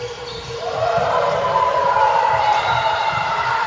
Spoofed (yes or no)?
yes